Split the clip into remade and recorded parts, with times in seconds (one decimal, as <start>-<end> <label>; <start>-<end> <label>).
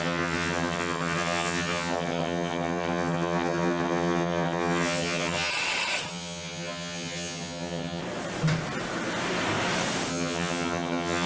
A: 0.0-5.5 remade; 5.5-6.1 recorded; 6.1-8.0 remade; 8.0-10.1 recorded; 10.1-11.3 remade